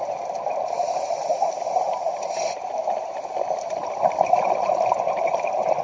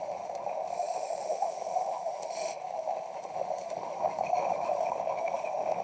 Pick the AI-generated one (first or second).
second